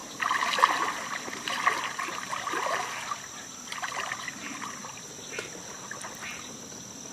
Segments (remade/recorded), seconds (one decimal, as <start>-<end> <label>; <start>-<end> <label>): 0.0-7.1 recorded